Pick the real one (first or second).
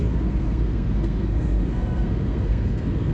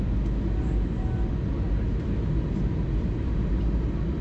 second